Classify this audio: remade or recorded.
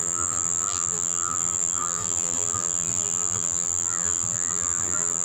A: remade